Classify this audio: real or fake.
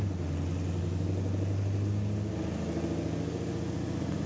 real